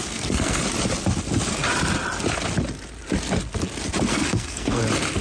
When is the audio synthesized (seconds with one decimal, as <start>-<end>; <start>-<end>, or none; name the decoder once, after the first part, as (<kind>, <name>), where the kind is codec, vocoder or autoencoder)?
0.0-0.6 (codec, SNAC); 4.1-4.8